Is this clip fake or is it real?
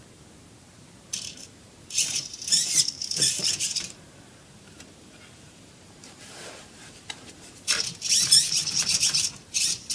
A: fake